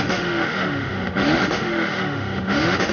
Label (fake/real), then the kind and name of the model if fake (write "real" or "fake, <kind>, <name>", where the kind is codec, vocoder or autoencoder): fake, autoencoder, DAC-VAE